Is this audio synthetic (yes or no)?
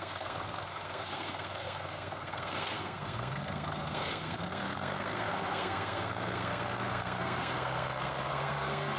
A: yes